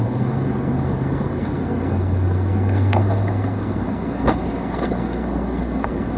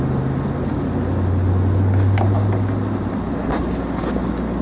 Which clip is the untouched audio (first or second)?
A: second